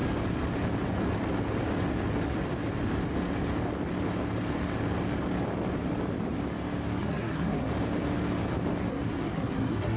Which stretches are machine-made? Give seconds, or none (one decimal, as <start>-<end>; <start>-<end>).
7.0-7.7; 8.9-10.0